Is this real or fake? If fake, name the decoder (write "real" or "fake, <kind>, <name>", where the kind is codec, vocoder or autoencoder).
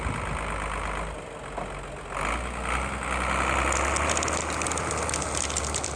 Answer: real